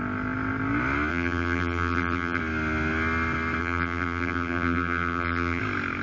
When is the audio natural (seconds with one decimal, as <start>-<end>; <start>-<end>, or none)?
0.0-1.1; 2.4-3.6; 5.6-6.0